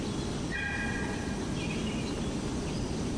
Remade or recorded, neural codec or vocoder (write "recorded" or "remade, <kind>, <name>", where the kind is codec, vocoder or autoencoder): recorded